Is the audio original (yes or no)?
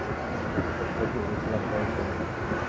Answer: yes